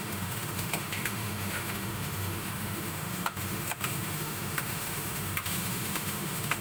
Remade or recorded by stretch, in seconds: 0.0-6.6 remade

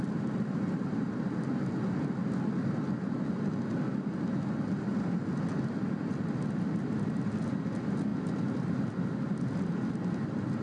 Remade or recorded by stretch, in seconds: 0.0-10.6 recorded

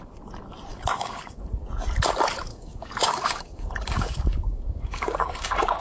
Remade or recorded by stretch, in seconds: 0.0-0.7 recorded; 0.7-1.4 remade; 1.4-2.5 recorded; 2.5-5.8 remade